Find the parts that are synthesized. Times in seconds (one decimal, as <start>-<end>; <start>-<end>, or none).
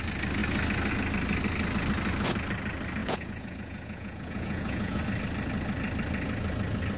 3.0-5.0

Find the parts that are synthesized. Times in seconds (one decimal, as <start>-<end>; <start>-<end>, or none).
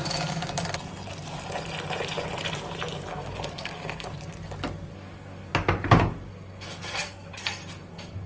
3.1-4.1; 4.9-5.5; 6.3-8.3